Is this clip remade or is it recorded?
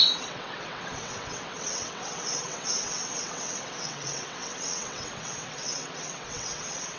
remade